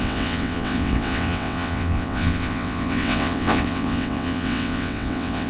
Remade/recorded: remade